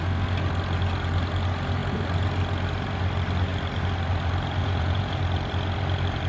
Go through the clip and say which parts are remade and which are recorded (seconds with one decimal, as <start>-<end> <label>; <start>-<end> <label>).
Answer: 0.0-4.6 recorded; 4.6-5.2 remade; 5.2-6.3 recorded

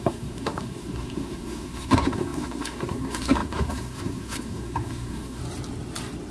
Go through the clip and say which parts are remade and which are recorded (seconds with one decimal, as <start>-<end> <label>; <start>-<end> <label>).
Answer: 0.0-5.4 remade; 5.4-6.3 recorded